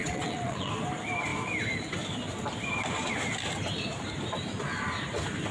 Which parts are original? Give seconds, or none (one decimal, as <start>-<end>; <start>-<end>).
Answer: 0.7-5.5